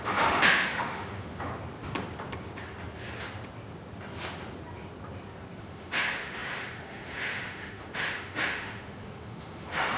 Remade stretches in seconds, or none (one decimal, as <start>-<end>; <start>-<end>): 0.0-1.5; 5.6-10.0